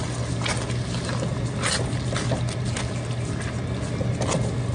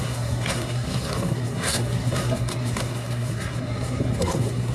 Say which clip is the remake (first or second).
second